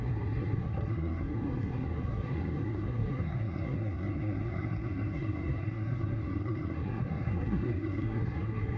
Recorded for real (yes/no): no